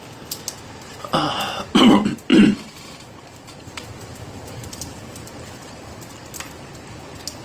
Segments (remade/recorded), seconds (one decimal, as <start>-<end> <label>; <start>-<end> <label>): 0.0-2.3 recorded; 2.3-5.7 remade; 5.7-7.4 recorded